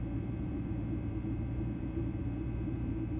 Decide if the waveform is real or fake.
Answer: fake